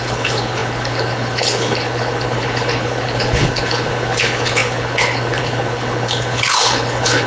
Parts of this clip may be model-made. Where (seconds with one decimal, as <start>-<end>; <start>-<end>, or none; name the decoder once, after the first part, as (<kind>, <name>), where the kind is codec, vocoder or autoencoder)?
0.0-7.3 (codec, HILCodec)